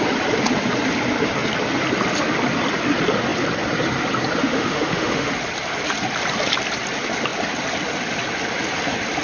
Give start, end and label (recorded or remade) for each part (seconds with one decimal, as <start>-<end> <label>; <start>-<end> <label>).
0.0-4.4 recorded; 4.4-5.3 remade; 5.3-9.2 recorded